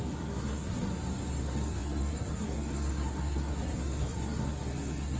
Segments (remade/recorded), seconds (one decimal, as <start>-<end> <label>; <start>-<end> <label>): 0.0-0.9 remade; 0.9-1.4 recorded; 1.4-5.2 remade